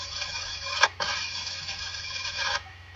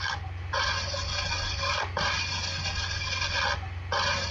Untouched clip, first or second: second